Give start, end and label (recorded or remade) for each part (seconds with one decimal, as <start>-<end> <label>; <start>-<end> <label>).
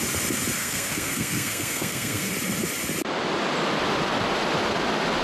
0.0-0.6 recorded; 0.6-2.3 remade; 2.3-5.2 recorded